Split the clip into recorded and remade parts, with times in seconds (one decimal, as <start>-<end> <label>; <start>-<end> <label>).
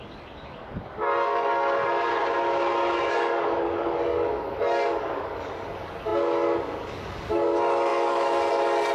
0.0-2.1 remade; 2.1-3.1 recorded; 3.1-8.9 remade